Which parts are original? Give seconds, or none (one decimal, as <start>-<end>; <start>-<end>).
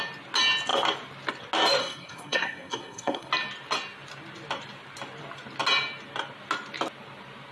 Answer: 0.0-1.8; 3.3-7.5